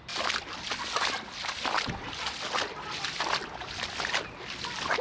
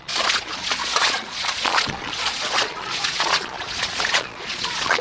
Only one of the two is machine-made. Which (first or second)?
second